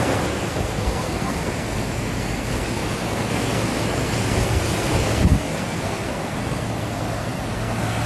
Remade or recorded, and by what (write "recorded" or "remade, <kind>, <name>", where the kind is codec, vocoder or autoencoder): remade, codec, SNAC